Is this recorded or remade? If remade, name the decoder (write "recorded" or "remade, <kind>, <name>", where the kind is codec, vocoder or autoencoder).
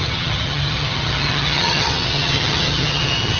remade, vocoder, HiFi-GAN